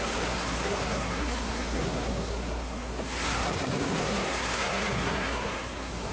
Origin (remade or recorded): remade